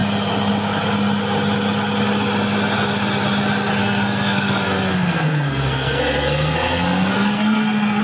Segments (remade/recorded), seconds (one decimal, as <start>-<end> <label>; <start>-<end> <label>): 0.0-3.8 recorded; 3.8-8.0 remade